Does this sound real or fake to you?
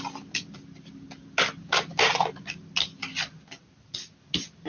real